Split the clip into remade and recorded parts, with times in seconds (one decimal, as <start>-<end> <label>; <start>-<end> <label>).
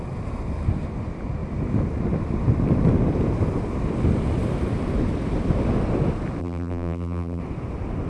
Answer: 0.0-6.4 recorded; 6.4-7.4 remade; 7.4-8.1 recorded